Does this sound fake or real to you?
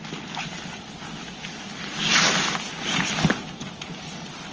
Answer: real